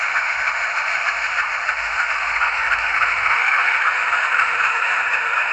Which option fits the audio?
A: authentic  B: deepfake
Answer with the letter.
B